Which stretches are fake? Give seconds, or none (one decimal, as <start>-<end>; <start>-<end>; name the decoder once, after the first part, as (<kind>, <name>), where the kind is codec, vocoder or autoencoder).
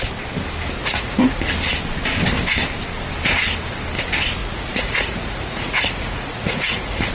0.8-1.4 (vocoder, Vocos); 4.4-7.1